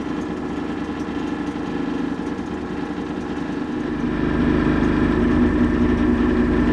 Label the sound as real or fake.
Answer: real